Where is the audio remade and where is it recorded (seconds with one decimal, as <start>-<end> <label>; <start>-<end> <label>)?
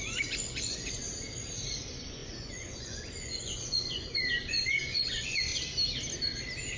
0.0-1.0 remade; 1.0-1.7 recorded; 1.7-5.5 remade; 5.5-6.8 recorded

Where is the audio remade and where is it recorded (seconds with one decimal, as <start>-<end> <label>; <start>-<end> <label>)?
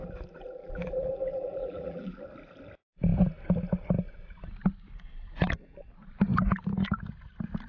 0.0-0.6 recorded; 0.6-2.2 remade; 2.2-7.7 recorded